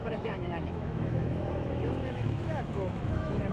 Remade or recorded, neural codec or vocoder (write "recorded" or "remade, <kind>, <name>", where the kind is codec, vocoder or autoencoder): remade, autoencoder, DAC-VAE